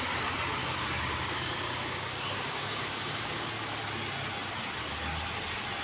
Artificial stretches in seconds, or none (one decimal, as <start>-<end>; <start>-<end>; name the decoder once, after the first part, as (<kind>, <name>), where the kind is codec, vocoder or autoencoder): 0.6-3.5 (codec, DAC)